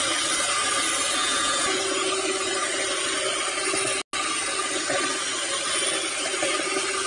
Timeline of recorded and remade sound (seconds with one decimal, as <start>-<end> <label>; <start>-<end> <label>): 0.0-1.2 recorded; 1.2-1.8 remade; 1.8-7.1 recorded